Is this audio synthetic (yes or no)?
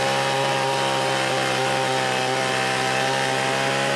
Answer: no